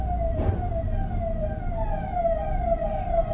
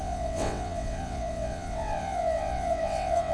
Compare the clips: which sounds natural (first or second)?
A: first